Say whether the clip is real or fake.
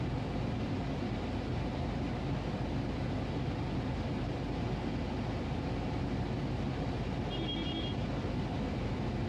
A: real